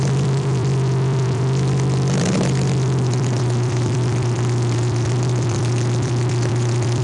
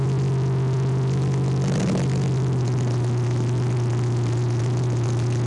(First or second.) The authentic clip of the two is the second